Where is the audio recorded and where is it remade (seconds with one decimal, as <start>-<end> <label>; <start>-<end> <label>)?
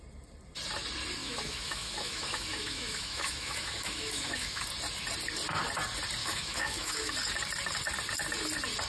0.0-1.2 recorded; 1.2-4.6 remade; 4.6-6.2 recorded; 6.2-7.1 remade; 7.1-8.9 recorded